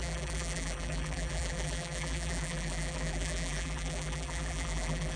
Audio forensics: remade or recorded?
remade